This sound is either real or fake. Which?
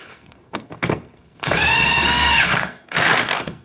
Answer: fake